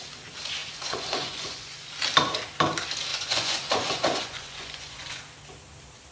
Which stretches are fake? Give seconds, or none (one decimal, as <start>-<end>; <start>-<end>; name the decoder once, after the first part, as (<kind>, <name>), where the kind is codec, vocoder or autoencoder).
0.6-1.9 (vocoder, Vocos); 3.1-5.2